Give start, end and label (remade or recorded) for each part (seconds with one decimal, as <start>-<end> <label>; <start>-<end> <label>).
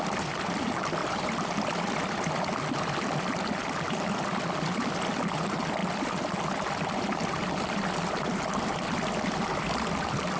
0.0-1.0 remade; 1.0-4.2 recorded; 4.2-10.4 remade